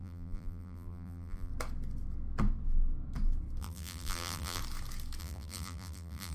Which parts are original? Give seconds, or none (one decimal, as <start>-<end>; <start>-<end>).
1.5-3.6; 4.6-5.2